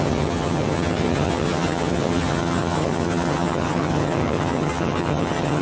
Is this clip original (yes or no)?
no